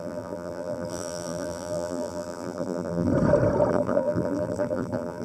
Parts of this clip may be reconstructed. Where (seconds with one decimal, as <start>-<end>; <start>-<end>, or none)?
0.0-3.1; 3.7-5.2